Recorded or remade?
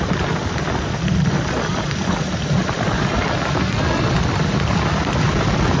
remade